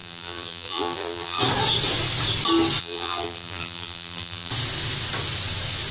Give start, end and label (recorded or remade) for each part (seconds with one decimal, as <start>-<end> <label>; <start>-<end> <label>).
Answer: 0.0-1.4 remade; 1.4-2.8 recorded; 2.8-4.5 remade; 4.5-5.9 recorded